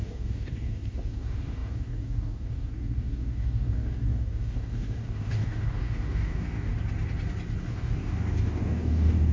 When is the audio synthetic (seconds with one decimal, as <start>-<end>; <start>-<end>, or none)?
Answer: 0.0-6.7; 7.6-9.3